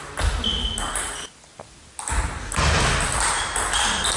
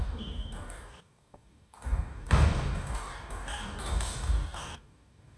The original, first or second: first